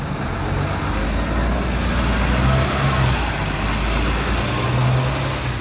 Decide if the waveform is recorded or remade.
recorded